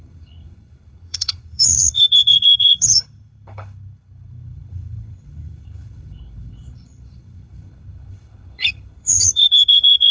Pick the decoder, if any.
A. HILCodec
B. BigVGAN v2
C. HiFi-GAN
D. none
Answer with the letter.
A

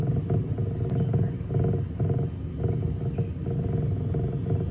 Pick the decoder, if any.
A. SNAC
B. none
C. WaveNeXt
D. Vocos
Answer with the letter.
B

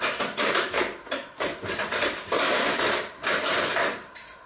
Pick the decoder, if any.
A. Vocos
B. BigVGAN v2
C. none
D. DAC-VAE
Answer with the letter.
B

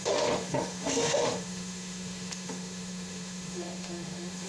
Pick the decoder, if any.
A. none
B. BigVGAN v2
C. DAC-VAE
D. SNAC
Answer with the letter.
C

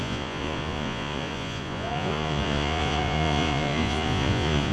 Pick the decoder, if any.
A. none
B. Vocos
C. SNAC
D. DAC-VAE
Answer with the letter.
B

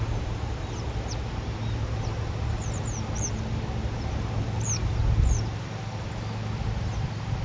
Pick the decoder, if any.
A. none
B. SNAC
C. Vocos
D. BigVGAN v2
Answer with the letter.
A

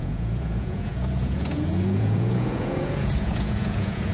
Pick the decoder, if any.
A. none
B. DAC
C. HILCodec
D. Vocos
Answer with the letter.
D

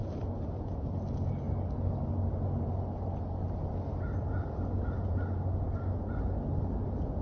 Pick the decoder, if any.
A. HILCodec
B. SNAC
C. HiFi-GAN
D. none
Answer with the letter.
D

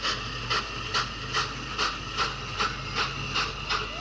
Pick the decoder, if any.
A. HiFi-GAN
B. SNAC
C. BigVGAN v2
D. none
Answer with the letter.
D